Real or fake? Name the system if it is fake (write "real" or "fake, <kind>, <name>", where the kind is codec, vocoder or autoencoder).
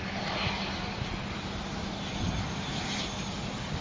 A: real